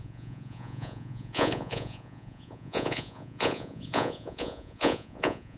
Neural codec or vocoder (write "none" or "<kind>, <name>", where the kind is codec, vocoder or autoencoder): vocoder, Vocos